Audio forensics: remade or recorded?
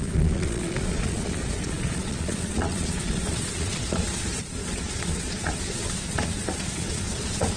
remade